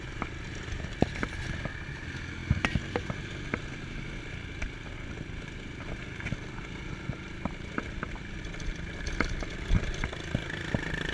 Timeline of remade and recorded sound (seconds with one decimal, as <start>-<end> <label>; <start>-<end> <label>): 0.0-11.1 recorded